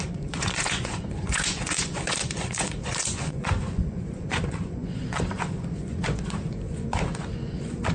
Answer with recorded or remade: remade